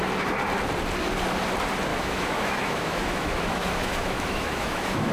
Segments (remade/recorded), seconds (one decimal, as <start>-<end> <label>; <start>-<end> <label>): 0.0-1.9 recorded; 1.9-5.1 remade

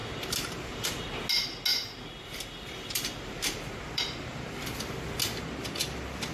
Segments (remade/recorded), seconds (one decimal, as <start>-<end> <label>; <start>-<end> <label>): 0.0-1.0 remade; 1.0-1.7 recorded; 1.7-4.6 remade; 4.6-6.3 recorded

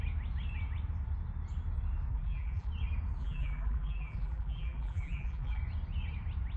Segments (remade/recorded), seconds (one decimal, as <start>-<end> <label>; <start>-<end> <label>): 0.0-2.1 recorded; 2.1-2.7 remade; 2.7-3.2 recorded; 3.2-5.6 remade; 5.6-6.6 recorded

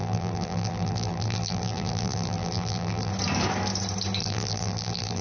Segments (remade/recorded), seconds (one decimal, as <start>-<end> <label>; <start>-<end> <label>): 0.0-3.1 remade; 3.1-4.2 recorded; 4.2-5.2 remade